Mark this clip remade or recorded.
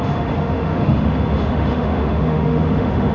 remade